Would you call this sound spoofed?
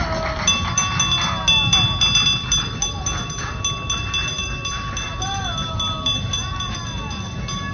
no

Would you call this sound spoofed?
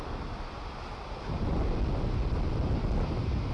no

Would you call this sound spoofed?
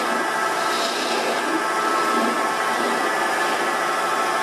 no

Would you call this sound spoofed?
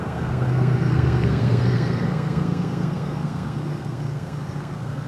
yes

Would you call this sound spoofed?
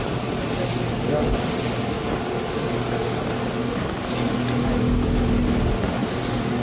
no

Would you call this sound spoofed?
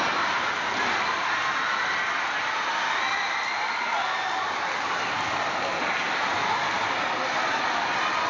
no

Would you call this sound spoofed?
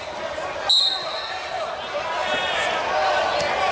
no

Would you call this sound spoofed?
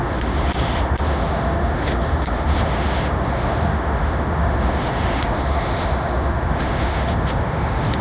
yes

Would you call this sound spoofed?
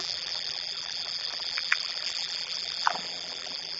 yes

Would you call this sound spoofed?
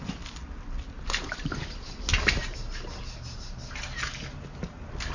no